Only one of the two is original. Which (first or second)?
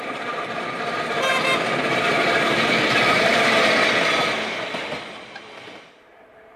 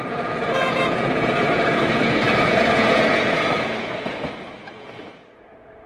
first